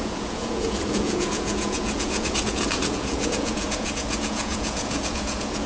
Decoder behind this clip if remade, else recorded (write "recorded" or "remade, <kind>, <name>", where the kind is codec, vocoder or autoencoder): remade, vocoder, Vocos